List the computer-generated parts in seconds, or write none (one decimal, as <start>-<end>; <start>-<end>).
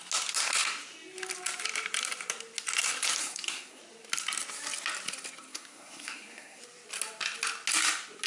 3.2-3.8; 5.5-6.6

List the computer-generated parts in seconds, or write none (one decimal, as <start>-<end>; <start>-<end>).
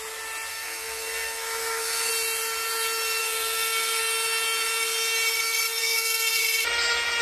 0.5-2.1; 3.2-4.0; 5.8-6.4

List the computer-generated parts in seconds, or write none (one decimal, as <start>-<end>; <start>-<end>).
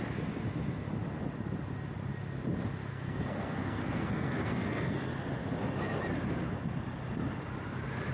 2.9-5.1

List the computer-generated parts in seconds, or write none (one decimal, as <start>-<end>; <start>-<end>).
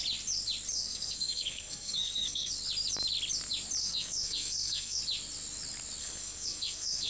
0.7-2.5; 3.8-5.0; 6.0-7.1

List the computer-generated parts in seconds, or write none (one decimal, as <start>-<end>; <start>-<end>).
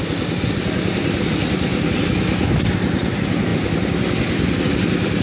none